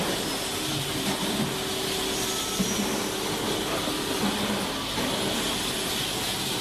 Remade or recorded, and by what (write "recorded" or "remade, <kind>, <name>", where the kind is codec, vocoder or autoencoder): recorded